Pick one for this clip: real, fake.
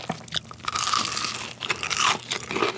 real